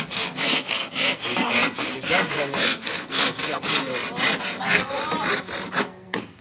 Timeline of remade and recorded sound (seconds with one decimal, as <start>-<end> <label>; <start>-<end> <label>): 0.0-3.9 remade; 3.9-4.4 recorded; 4.4-5.0 remade; 5.0-5.7 recorded; 5.7-6.4 remade